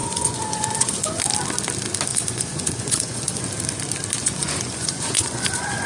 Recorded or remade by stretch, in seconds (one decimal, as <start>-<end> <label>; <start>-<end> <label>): 0.0-1.2 remade; 1.2-2.1 recorded; 2.1-3.4 remade; 3.4-4.2 recorded; 4.2-5.9 remade